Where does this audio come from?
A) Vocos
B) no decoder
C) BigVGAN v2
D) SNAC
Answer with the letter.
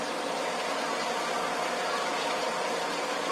C